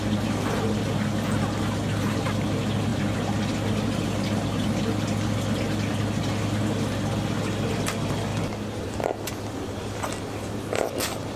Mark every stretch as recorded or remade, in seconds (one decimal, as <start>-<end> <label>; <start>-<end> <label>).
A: 0.0-11.4 recorded